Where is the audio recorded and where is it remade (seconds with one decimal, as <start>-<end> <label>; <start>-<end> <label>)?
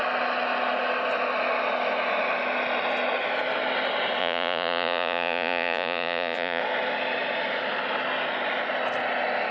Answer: 0.0-4.2 recorded; 4.2-6.6 remade; 6.6-9.5 recorded